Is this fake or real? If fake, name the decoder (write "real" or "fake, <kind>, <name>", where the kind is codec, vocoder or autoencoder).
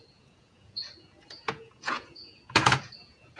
fake, vocoder, Vocos